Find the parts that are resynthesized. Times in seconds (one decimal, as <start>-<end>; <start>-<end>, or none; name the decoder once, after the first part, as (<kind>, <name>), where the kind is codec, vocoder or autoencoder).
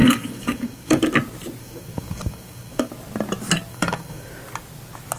0.0-1.0 (codec, DAC); 1.6-2.9; 3.7-4.3